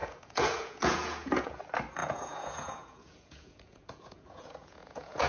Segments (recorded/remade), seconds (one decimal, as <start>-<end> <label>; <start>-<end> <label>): 0.0-1.6 remade; 1.6-2.0 recorded; 2.0-5.3 remade